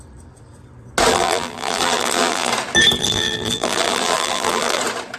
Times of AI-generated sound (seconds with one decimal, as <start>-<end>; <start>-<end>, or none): 1.1-2.5; 3.0-4.8